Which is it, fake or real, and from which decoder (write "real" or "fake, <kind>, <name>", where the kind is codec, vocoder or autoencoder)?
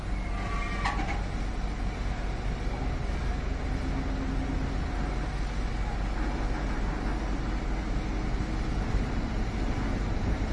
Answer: real